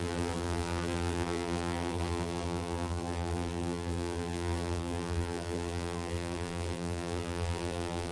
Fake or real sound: fake